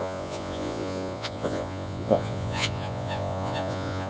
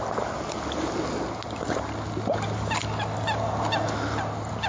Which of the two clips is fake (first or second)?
first